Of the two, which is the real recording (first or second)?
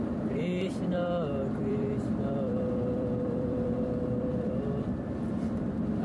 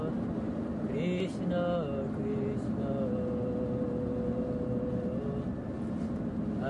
second